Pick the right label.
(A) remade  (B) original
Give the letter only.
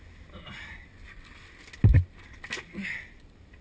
B